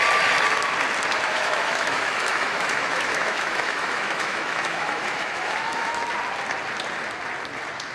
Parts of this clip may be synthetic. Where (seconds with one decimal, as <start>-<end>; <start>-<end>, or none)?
1.3-6.0